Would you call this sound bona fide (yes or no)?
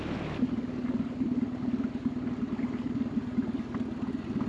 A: yes